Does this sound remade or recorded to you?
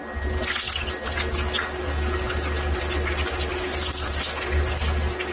recorded